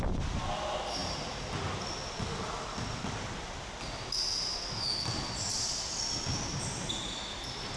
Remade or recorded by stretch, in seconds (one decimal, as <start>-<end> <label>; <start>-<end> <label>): 0.0-7.8 recorded